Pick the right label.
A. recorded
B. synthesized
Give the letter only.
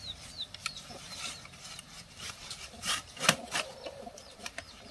B